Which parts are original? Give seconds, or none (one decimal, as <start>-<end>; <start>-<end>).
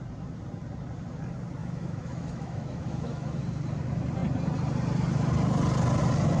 0.0-1.6; 3.4-6.4